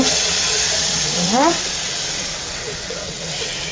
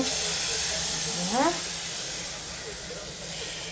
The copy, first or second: first